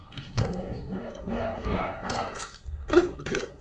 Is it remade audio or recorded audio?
remade